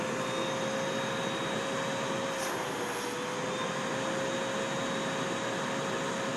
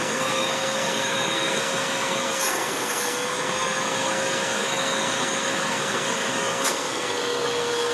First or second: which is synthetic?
second